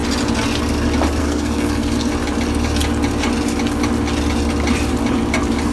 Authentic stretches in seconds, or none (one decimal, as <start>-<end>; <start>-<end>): 0.0-1.2; 2.1-5.7